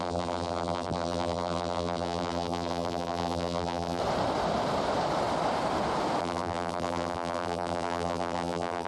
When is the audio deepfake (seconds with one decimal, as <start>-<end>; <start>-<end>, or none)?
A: 0.0-4.0; 6.2-8.9